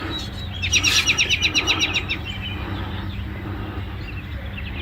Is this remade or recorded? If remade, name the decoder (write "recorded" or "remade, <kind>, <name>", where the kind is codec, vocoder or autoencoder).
recorded